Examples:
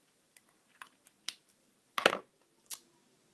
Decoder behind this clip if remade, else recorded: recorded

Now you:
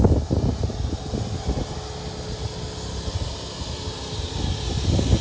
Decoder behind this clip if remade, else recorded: recorded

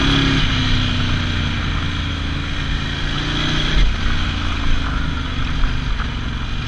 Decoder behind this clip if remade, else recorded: recorded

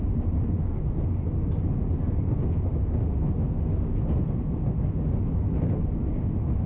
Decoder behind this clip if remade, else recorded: recorded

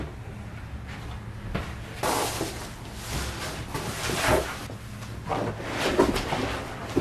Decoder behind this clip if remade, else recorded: recorded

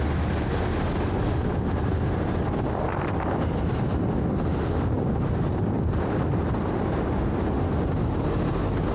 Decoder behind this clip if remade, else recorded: recorded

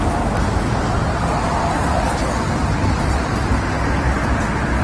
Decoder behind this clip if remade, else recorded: recorded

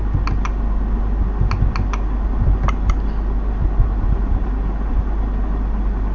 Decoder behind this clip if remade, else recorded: recorded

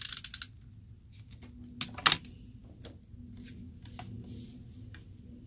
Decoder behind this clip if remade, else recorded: recorded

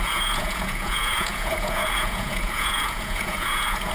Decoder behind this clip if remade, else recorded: remade, vocoder, Vocos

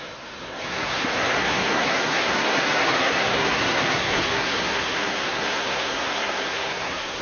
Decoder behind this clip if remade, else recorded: remade, codec, SNAC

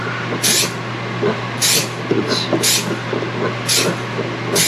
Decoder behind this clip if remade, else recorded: recorded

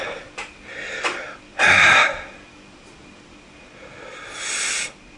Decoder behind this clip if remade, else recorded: recorded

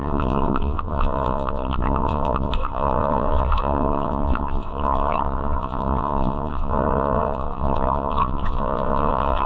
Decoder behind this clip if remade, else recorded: remade, vocoder, WaveNeXt